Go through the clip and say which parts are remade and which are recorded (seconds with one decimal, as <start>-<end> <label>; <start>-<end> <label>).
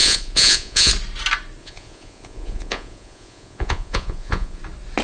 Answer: 0.0-0.9 remade; 0.9-1.6 recorded; 1.6-4.6 remade; 4.6-5.0 recorded